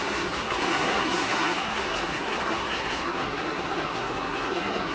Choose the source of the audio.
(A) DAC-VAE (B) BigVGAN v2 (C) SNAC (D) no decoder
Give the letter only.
C